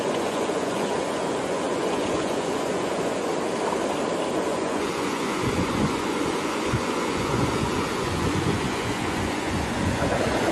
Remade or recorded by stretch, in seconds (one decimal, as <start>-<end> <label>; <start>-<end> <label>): 0.0-3.3 remade; 3.3-4.3 recorded; 4.3-10.5 remade